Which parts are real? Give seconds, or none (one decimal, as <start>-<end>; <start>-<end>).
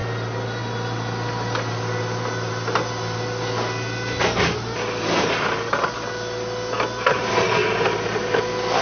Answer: 0.0-8.8